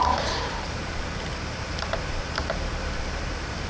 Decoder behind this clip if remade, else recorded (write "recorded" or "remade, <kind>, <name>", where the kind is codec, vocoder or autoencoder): remade, vocoder, BigVGAN v2